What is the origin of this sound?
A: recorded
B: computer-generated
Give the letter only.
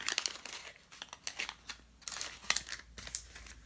A